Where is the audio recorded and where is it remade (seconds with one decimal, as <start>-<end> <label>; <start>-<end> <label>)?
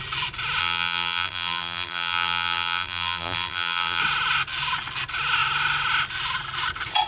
0.0-0.6 recorded; 0.6-4.0 remade; 4.0-7.1 recorded